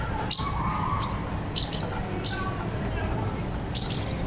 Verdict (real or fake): real